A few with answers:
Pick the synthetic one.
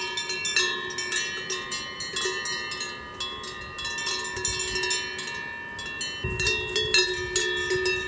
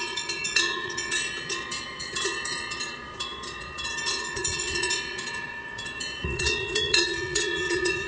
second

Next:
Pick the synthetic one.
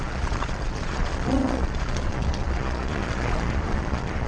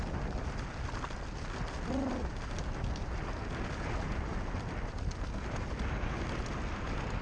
first